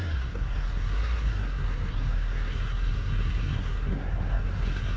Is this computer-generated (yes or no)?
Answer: yes